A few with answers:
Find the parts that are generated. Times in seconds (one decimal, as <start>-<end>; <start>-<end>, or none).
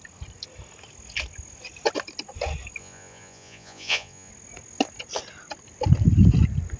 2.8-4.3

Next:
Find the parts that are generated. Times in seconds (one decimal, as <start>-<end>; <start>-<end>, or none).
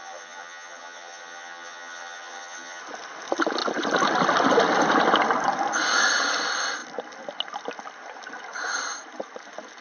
0.0-2.8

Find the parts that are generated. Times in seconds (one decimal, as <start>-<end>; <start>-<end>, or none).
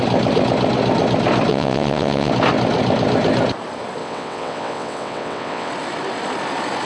1.5-2.3; 4.0-5.7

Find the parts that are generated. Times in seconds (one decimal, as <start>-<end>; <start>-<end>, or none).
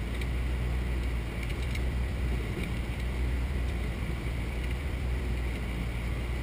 1.5-5.3